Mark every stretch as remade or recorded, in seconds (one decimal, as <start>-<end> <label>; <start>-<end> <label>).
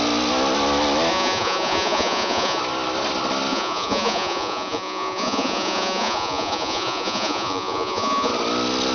0.0-1.1 recorded; 1.1-2.6 remade; 2.6-3.5 recorded; 3.5-8.3 remade; 8.3-8.9 recorded